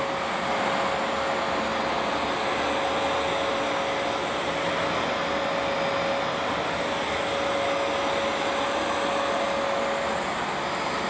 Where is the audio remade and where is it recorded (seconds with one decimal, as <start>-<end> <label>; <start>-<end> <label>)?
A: 0.0-11.1 recorded